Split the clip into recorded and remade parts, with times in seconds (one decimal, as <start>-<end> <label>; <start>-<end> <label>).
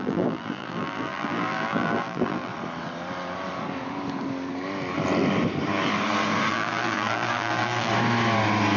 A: 0.0-2.5 remade; 2.5-6.5 recorded; 6.5-7.9 remade; 7.9-8.8 recorded